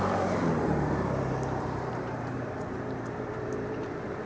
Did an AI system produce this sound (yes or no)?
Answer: yes